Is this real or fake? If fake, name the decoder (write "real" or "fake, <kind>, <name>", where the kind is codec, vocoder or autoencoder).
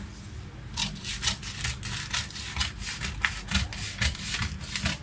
real